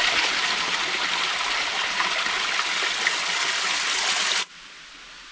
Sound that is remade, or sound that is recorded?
recorded